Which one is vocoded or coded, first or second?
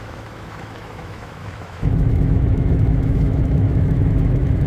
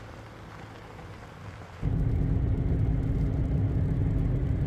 first